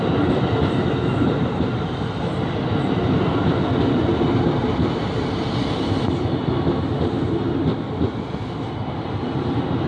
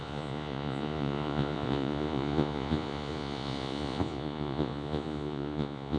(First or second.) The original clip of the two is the first